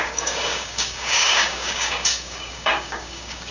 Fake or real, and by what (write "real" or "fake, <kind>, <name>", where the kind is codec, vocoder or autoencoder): fake, codec, DAC